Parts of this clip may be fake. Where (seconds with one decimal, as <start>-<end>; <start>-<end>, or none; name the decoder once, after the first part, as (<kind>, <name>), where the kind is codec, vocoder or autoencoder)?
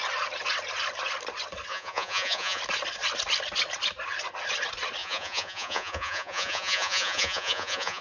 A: 1.7-2.6 (vocoder, Vocos); 5.0-8.0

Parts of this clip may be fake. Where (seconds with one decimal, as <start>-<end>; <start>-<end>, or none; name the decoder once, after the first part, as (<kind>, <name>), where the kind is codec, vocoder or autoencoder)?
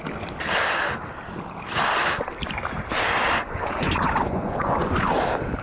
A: 3.4-5.1 (vocoder, Vocos)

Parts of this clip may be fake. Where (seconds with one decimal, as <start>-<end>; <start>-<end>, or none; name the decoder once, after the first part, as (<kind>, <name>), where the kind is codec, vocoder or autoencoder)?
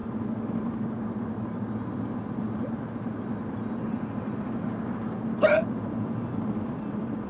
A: none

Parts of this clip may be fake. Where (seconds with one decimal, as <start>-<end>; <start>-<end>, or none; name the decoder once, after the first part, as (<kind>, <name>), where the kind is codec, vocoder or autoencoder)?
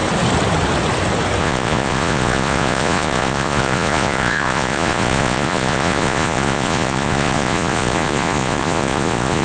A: 1.4-9.4 (vocoder, Vocos)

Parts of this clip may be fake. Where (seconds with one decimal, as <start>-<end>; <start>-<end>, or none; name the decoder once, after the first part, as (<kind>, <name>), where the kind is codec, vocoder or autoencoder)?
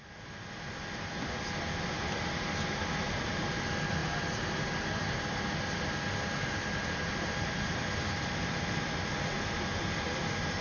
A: none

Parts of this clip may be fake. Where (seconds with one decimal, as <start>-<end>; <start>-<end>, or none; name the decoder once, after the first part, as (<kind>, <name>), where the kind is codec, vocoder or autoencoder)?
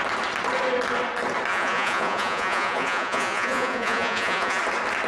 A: 1.5-4.6 (vocoder, Vocos)